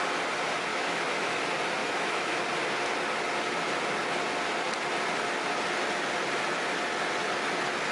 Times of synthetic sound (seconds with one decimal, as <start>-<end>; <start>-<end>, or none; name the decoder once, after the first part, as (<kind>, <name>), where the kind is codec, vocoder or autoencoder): 0.7-1.4 (autoencoder, DAC-VAE); 1.8-2.4